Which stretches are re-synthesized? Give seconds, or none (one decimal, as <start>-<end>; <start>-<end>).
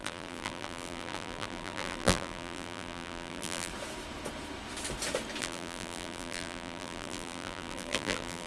0.0-3.7; 5.4-8.5